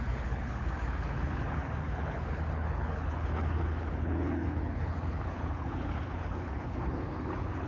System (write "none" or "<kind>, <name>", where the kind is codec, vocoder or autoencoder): codec, HILCodec